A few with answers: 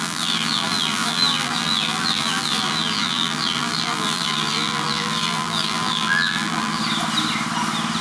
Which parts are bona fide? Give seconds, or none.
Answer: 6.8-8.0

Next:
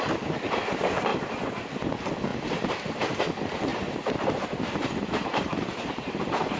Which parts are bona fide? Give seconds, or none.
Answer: 0.0-1.1; 1.7-2.3; 3.2-3.7